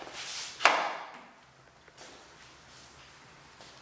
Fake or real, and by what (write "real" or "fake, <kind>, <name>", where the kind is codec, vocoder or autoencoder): real